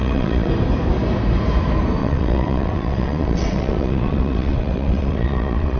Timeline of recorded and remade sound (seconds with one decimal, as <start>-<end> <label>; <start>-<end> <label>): 0.0-0.5 remade; 0.5-2.0 recorded; 2.0-5.8 remade